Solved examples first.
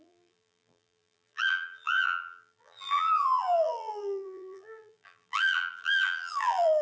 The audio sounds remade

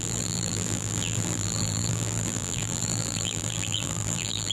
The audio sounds remade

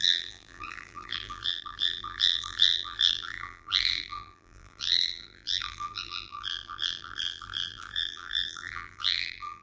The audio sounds remade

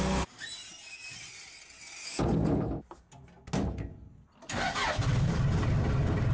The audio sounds recorded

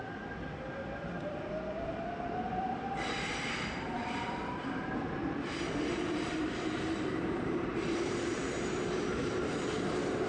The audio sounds remade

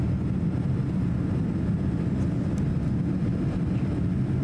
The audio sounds recorded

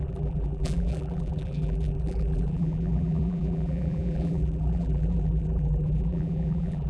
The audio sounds remade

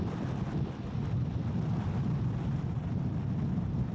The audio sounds recorded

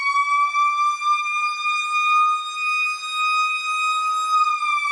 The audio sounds recorded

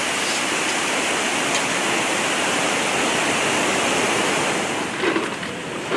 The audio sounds recorded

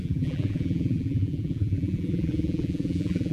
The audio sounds remade